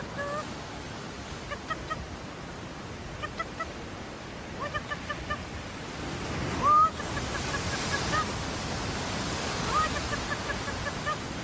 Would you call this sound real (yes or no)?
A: yes